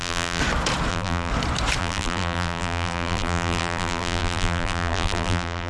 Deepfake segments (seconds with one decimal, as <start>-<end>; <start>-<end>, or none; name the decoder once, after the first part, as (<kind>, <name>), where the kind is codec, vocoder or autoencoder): 0.0-0.4 (vocoder, BigVGAN v2); 0.9-1.3; 1.8-5.7